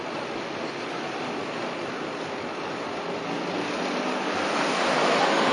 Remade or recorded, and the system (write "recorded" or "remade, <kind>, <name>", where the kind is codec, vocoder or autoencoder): recorded